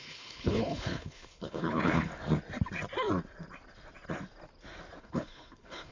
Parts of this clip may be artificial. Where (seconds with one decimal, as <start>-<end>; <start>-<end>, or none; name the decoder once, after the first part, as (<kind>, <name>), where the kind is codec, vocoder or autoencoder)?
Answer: 0.0-2.1 (codec, HILCodec); 5.0-5.9